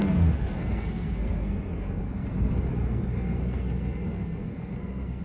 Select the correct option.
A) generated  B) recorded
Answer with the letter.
A